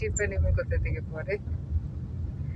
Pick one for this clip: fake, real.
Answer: real